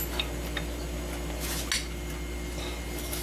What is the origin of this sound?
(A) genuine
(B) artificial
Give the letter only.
A